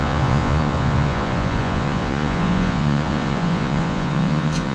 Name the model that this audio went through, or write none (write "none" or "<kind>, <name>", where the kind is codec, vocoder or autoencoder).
vocoder, Vocos